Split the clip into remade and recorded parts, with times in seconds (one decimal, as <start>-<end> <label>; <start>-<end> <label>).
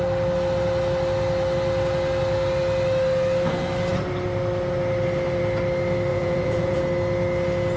0.0-6.1 recorded; 6.1-6.8 remade; 6.8-7.8 recorded